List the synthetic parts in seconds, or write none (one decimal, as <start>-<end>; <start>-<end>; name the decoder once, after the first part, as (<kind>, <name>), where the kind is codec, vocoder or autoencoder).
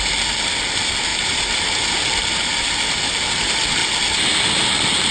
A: none